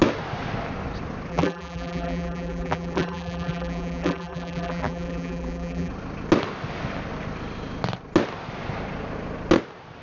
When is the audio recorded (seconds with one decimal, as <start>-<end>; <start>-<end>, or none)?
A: 0.0-1.3; 5.9-10.0